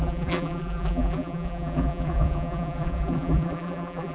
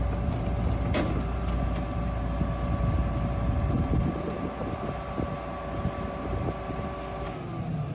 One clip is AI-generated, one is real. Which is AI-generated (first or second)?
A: first